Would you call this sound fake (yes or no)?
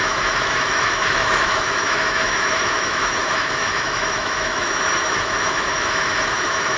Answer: yes